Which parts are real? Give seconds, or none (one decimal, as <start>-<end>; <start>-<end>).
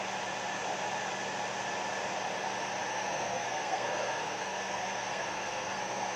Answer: 0.0-2.9